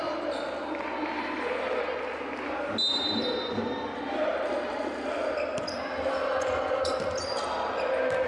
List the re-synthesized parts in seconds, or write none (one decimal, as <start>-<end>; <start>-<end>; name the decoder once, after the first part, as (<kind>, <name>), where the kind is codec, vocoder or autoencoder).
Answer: 4.3-7.4 (vocoder, BigVGAN v2)